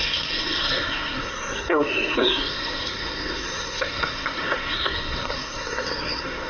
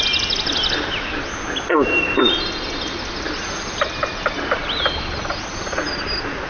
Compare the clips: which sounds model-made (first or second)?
first